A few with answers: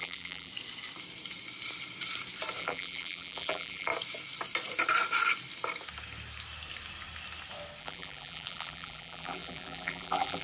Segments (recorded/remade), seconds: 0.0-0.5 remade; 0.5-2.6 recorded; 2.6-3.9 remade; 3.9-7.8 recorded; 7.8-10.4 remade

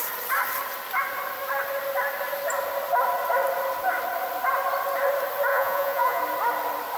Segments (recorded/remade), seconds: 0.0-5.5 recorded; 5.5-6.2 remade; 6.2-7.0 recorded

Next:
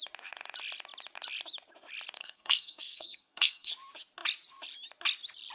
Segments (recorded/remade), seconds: 0.0-2.2 recorded; 2.2-3.7 remade; 3.7-5.5 recorded

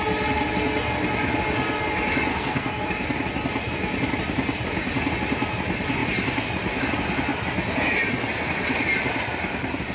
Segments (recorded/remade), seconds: 0.0-2.3 recorded; 2.3-2.9 remade; 2.9-9.9 recorded

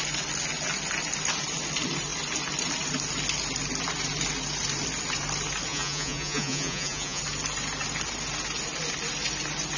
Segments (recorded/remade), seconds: 0.0-5.7 recorded; 5.7-7.2 remade; 7.2-9.8 recorded

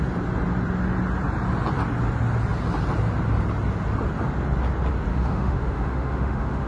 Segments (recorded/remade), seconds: 0.0-5.1 recorded; 5.1-6.7 remade

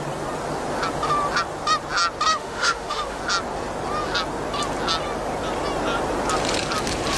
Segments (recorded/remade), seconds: 0.0-2.3 recorded; 2.3-3.2 remade; 3.2-7.2 recorded